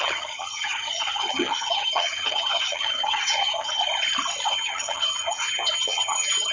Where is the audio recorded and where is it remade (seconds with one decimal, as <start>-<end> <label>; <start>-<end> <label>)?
0.0-3.8 remade; 3.8-4.5 recorded; 4.5-6.5 remade

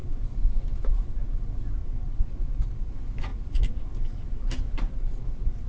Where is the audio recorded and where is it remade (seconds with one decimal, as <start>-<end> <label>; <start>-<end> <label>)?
0.0-1.2 remade; 1.2-1.8 recorded; 1.8-2.9 remade; 2.9-3.3 recorded; 3.3-5.7 remade

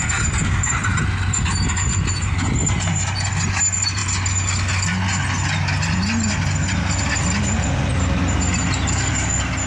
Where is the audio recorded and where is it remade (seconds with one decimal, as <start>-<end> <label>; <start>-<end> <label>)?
0.0-9.7 recorded

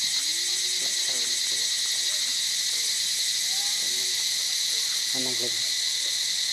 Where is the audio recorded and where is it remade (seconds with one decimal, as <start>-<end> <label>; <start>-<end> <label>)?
0.0-6.5 recorded

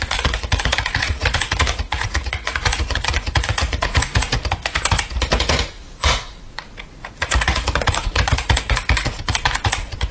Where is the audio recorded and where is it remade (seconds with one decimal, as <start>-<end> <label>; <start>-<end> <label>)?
0.0-4.4 remade; 4.4-5.4 recorded; 5.4-10.1 remade

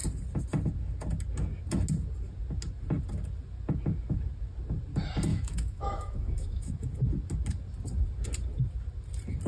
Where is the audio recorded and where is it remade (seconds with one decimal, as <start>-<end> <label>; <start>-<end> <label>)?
0.0-5.3 recorded; 5.3-6.9 remade; 6.9-9.5 recorded

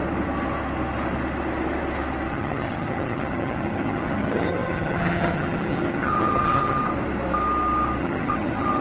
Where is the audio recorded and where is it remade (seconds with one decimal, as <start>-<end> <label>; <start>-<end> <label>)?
0.0-2.3 recorded; 2.3-6.8 remade; 6.8-8.0 recorded; 8.0-8.8 remade

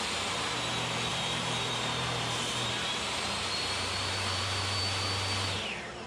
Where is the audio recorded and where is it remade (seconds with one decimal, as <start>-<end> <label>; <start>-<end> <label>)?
0.0-1.1 recorded; 1.1-4.8 remade; 4.8-6.1 recorded